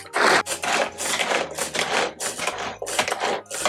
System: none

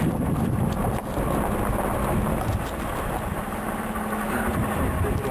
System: none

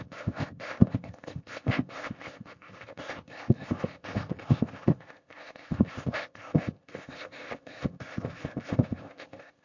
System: codec, ZipCodec